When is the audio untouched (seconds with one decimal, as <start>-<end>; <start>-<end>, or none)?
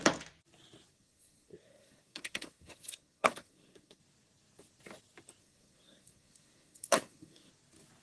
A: 0.0-0.9; 4.0-5.4; 7.5-8.0